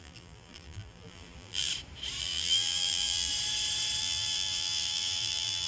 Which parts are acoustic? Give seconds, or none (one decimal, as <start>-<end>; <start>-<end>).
1.7-2.2; 3.3-4.0